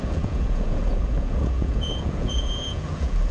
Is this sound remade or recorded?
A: remade